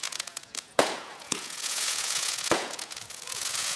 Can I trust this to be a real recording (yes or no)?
no